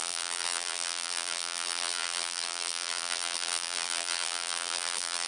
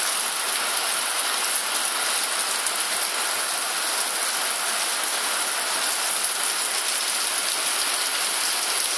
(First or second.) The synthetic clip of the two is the first